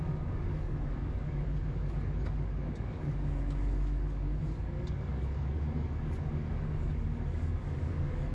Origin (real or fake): fake